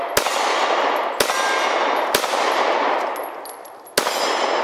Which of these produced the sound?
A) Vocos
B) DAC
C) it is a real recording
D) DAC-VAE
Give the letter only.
C